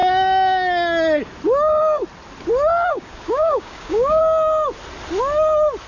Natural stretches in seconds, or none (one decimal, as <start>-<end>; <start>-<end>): 0.0-2.9; 4.2-5.9